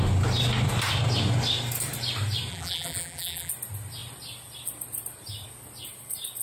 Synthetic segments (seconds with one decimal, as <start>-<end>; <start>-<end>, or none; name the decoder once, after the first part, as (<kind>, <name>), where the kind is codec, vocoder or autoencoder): 2.5-3.5 (vocoder, BigVGAN v2)